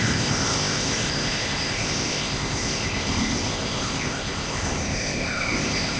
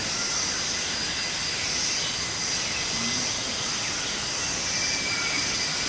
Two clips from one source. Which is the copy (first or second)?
first